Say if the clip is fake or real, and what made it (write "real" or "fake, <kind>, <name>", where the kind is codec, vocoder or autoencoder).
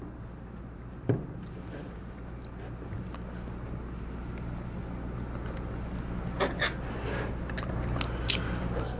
real